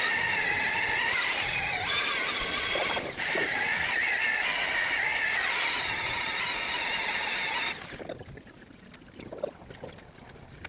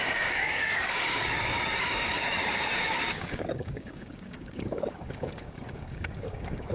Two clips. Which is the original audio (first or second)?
first